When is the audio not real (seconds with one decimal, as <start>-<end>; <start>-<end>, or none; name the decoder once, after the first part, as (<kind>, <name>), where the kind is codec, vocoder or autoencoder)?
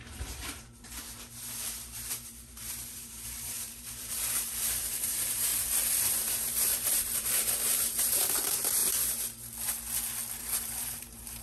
0.0-5.5 (vocoder, BigVGAN v2); 6.0-8.8; 10.4-11.4